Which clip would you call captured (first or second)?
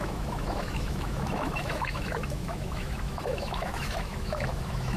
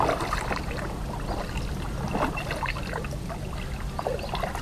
second